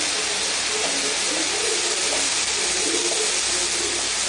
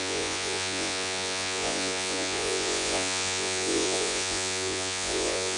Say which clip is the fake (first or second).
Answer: second